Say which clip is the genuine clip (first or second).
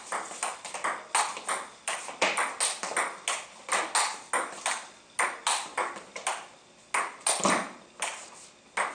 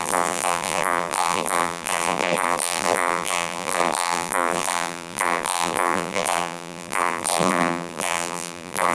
first